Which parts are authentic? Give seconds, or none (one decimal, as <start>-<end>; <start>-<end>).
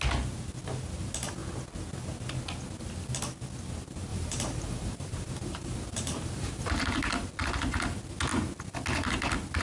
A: 0.0-4.1; 6.7-9.6